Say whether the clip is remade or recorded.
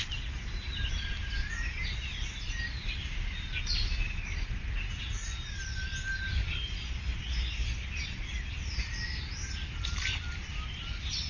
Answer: recorded